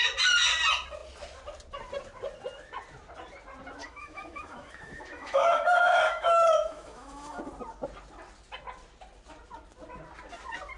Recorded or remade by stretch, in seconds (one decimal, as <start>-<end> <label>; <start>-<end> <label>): 0.0-3.8 recorded; 3.8-7.4 remade; 7.4-10.8 recorded